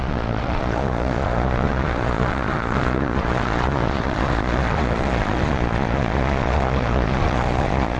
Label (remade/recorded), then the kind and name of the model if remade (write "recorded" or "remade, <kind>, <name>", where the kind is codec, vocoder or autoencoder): remade, vocoder, Vocos